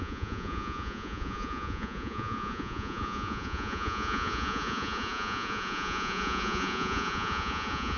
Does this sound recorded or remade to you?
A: remade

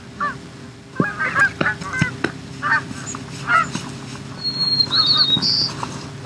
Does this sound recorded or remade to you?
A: recorded